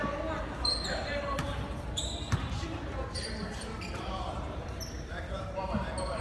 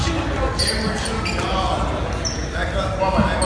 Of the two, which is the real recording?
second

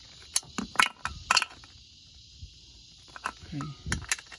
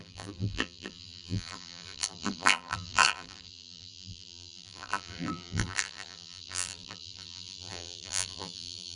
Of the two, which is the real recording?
first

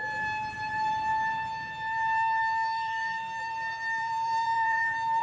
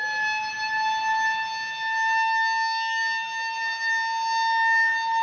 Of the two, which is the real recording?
second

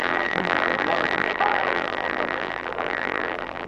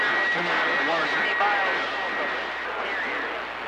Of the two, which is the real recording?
second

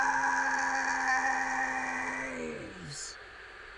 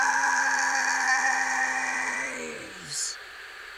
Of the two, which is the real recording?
first